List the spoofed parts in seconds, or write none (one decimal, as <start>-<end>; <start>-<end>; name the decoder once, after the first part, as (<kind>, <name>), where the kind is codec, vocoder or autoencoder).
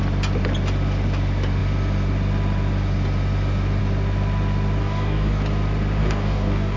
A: 4.8-5.4 (codec, DAC); 6.0-6.8